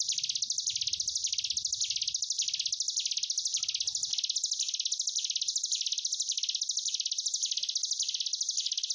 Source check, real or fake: real